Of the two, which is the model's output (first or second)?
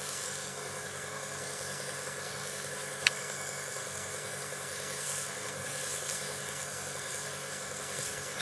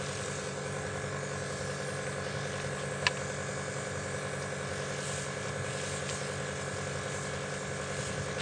first